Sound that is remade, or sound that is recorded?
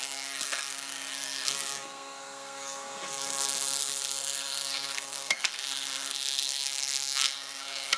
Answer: remade